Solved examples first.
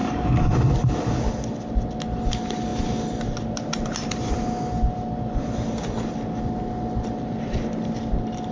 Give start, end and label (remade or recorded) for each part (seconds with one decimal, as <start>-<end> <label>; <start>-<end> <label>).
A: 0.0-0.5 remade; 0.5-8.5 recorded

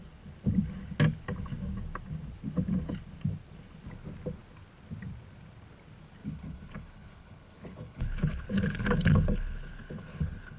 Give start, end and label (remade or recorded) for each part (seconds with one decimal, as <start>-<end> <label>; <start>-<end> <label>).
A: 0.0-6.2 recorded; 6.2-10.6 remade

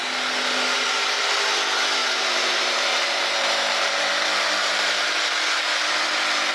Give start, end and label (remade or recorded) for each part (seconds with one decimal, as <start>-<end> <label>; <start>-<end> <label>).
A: 0.0-2.0 recorded; 2.0-4.2 remade; 4.2-6.5 recorded

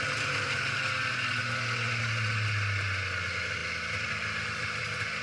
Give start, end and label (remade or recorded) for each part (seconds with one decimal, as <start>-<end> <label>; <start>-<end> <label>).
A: 0.0-5.2 recorded

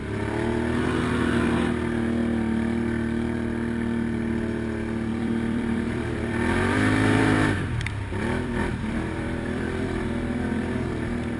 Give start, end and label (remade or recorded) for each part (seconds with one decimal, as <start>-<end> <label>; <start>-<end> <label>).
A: 0.0-5.1 recorded; 5.1-10.0 remade; 10.0-11.4 recorded

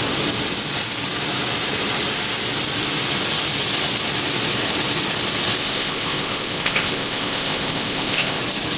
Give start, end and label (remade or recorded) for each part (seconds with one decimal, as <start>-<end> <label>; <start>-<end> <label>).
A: 0.0-5.6 recorded; 5.6-8.4 remade; 8.4-8.8 recorded

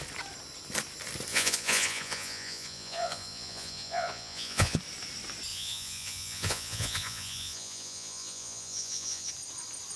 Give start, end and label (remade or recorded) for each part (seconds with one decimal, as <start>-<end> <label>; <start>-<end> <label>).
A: 0.0-1.3 recorded; 1.3-4.8 remade; 4.8-5.5 recorded; 5.5-9.3 remade; 9.3-10.0 recorded

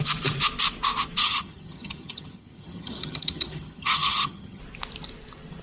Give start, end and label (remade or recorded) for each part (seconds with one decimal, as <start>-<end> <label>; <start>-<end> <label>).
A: 0.0-1.2 recorded; 1.2-4.6 remade; 4.6-5.6 recorded